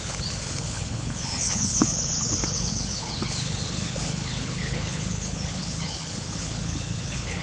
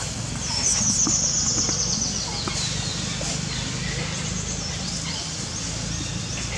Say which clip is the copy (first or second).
first